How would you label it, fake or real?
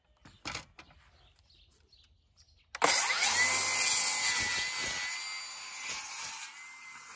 real